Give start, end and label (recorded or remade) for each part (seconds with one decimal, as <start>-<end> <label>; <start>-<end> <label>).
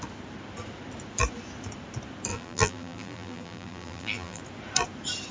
0.0-2.3 recorded; 2.3-4.4 remade; 4.4-5.3 recorded